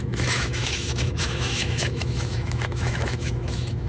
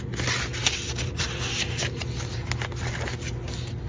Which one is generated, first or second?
first